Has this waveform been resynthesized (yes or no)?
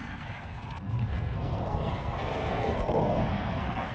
yes